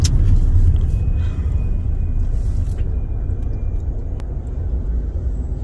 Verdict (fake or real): real